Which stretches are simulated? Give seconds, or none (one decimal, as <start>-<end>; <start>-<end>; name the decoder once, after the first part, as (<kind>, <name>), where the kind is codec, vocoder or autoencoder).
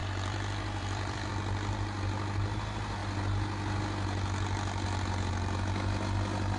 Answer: 0.0-3.0 (vocoder, BigVGAN v2); 5.3-6.6